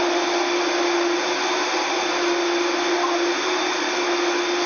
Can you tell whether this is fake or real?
real